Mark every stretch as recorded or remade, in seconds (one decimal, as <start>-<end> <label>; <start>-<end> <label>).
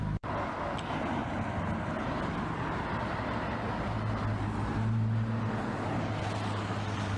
0.0-7.2 recorded